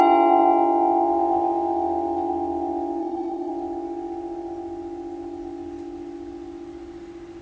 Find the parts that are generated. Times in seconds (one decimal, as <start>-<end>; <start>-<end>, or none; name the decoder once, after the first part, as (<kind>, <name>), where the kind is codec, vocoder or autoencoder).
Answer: 3.0-3.5 (vocoder, Vocos)